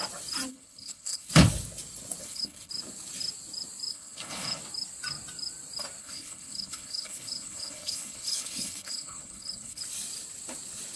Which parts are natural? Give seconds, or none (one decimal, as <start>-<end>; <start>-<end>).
0.0-0.5; 1.3-2.2; 2.7-3.9; 4.6-6.0; 9.8-11.0